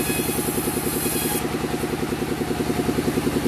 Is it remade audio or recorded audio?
recorded